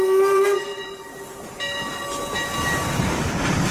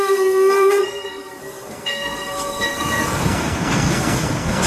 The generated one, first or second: second